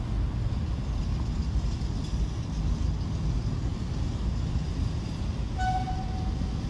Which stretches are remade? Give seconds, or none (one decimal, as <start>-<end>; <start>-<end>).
none